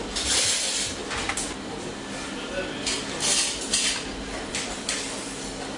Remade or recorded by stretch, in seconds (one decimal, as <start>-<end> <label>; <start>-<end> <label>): 0.0-5.8 recorded